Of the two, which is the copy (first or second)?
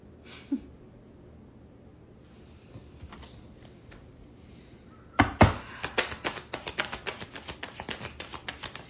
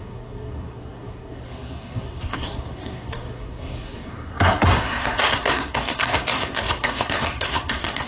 second